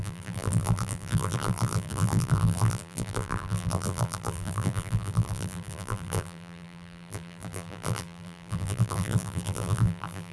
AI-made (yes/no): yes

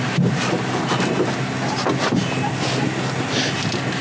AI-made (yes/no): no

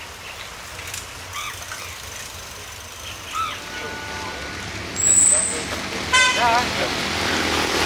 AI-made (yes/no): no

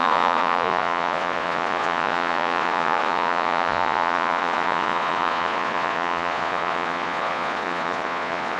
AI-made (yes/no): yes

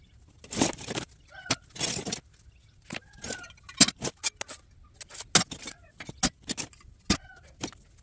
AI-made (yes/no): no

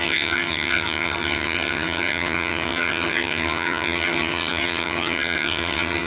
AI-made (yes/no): yes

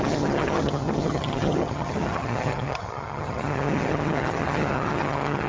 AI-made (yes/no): yes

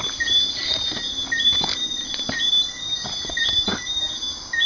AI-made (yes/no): no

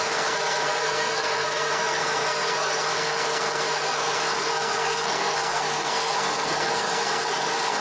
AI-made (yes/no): yes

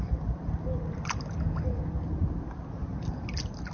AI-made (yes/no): no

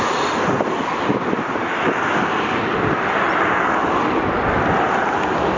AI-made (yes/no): no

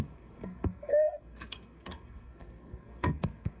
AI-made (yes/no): yes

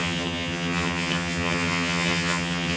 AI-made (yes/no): yes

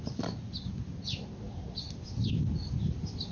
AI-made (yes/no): no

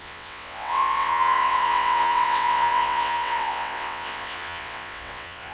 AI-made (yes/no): yes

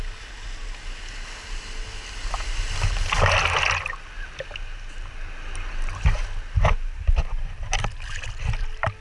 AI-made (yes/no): no